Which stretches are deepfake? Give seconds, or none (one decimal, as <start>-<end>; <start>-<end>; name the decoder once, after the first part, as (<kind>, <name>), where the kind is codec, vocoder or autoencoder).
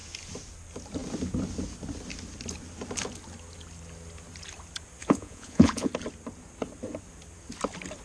5.0-5.9 (vocoder, Vocos)